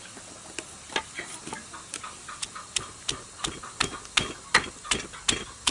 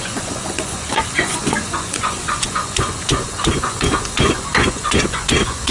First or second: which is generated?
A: second